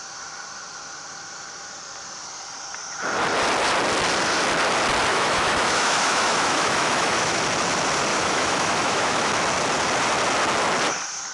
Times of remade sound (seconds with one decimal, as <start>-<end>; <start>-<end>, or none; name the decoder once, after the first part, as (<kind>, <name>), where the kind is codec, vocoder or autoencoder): 5.1-7.4 (autoencoder, DAC-VAE); 8.1-9.3